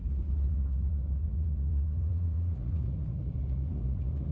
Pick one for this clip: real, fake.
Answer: fake